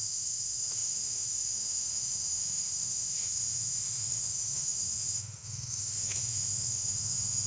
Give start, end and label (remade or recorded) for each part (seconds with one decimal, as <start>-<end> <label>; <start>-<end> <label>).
0.0-7.5 remade

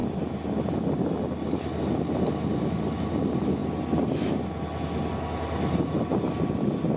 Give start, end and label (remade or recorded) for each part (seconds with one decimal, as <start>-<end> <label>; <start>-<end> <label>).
0.0-7.0 recorded

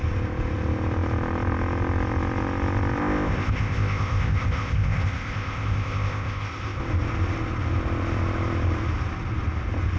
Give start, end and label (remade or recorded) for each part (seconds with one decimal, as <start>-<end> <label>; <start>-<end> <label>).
0.0-3.0 recorded; 3.0-6.8 remade; 6.8-10.0 recorded

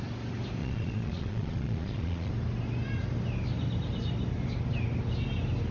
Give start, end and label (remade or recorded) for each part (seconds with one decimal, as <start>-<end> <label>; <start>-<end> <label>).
0.0-0.6 recorded; 0.6-2.3 remade; 2.3-5.7 recorded

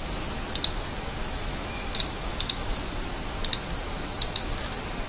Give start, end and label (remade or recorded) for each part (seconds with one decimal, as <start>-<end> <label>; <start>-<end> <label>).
0.0-1.2 recorded; 1.2-2.8 remade; 2.8-5.1 recorded

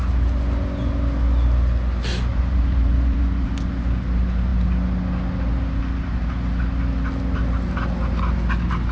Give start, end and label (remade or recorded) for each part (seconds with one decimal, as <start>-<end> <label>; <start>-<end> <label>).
0.0-2.3 recorded; 2.3-3.5 remade; 3.5-8.9 recorded

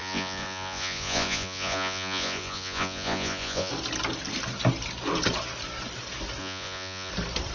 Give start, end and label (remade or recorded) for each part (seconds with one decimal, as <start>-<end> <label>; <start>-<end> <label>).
0.0-3.7 remade; 3.7-6.4 recorded; 6.4-7.1 remade; 7.1-7.5 recorded